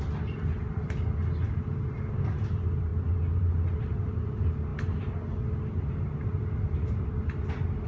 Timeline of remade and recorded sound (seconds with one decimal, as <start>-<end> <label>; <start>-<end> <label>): 0.0-7.9 recorded